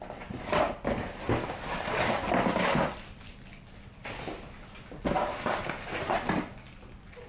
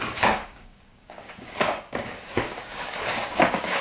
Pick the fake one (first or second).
second